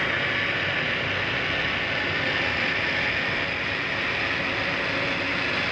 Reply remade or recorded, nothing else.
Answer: recorded